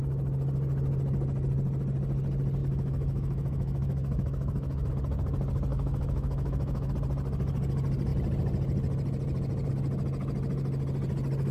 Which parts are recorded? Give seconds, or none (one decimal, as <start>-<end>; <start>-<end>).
0.0-2.6; 4.9-5.7; 6.9-11.5